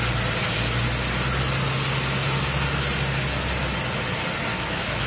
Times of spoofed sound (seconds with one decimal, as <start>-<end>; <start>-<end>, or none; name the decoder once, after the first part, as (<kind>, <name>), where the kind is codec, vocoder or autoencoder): 4.5-5.1 (autoencoder, DAC-VAE)